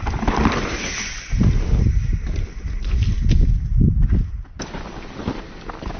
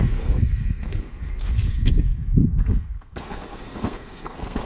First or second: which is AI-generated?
second